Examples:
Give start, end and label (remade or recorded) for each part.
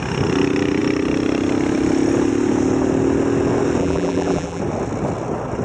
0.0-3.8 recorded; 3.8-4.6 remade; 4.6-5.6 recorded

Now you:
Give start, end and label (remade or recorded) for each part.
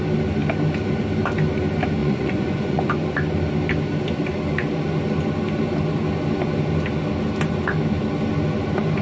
0.0-2.0 recorded; 2.0-2.9 remade; 2.9-9.0 recorded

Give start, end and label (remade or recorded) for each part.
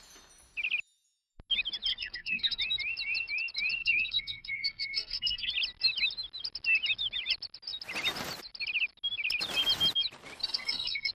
0.0-1.9 recorded; 1.9-2.6 remade; 2.6-3.8 recorded; 3.8-5.5 remade; 5.5-10.4 recorded; 10.4-11.1 remade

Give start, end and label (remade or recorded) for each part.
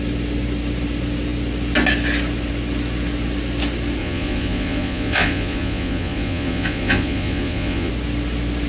0.0-4.0 recorded; 4.0-7.9 remade; 7.9-8.7 recorded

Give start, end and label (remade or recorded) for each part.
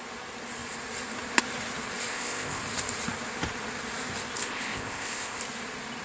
0.0-2.1 recorded; 2.1-2.6 remade; 2.6-4.4 recorded; 4.4-5.4 remade; 5.4-6.0 recorded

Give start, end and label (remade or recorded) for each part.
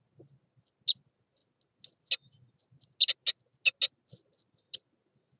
0.0-5.4 recorded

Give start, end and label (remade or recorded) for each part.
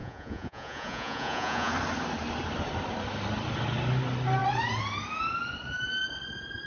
0.0-1.7 remade; 1.7-6.7 recorded